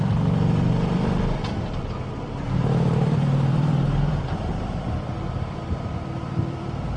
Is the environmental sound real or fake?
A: fake